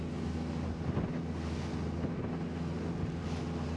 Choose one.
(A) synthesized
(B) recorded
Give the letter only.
B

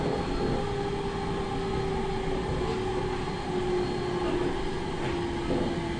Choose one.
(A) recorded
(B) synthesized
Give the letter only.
A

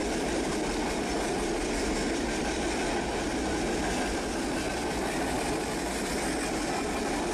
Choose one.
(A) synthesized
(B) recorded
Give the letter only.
B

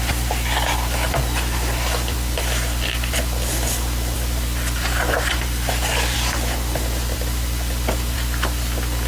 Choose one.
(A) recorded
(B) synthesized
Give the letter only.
A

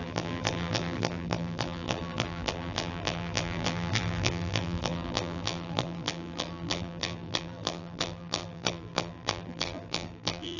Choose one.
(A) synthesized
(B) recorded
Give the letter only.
A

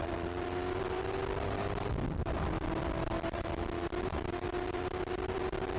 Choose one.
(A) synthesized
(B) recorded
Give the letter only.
A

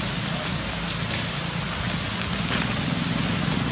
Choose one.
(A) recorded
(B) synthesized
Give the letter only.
A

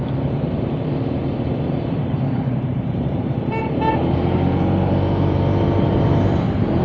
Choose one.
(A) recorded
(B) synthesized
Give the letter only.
B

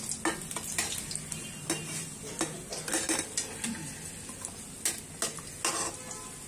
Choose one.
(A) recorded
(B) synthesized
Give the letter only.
A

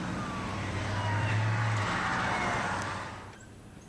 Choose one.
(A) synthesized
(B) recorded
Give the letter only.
A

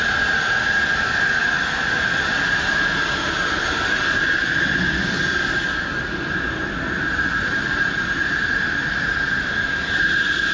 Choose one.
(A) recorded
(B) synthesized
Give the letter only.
A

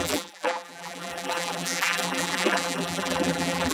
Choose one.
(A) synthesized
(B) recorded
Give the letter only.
A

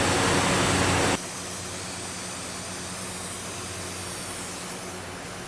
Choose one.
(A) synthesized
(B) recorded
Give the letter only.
B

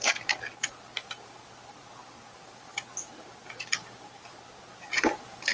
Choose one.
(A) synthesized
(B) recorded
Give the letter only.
B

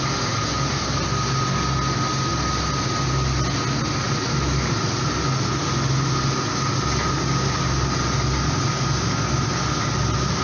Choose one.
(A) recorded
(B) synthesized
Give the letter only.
A